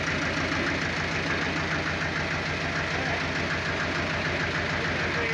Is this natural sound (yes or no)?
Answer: yes